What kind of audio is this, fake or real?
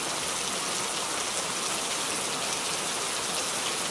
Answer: real